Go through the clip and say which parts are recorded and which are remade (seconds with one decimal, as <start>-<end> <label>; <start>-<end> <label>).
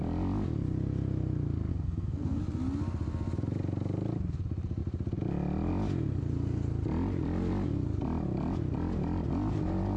0.0-1.7 recorded; 1.7-2.4 remade; 2.4-10.0 recorded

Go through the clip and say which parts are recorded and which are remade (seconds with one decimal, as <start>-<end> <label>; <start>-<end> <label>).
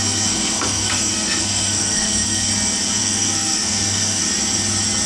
0.0-2.5 remade; 2.5-3.0 recorded; 3.0-4.2 remade; 4.2-5.1 recorded